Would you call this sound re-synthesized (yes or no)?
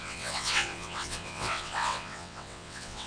yes